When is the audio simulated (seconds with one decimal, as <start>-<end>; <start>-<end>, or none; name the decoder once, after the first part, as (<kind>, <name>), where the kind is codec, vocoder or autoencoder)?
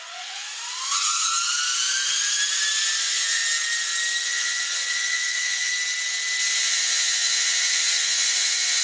0.0-0.5 (vocoder, Vocos); 3.0-3.4; 4.2-5.7; 6.6-8.8